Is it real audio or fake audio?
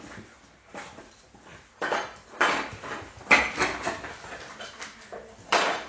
real